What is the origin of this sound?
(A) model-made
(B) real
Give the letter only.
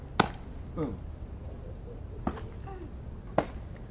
B